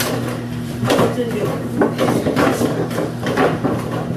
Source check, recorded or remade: remade